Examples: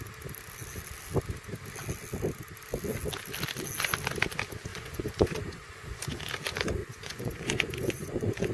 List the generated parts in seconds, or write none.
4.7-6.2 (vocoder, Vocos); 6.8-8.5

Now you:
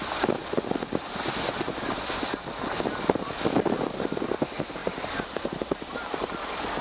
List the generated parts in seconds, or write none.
none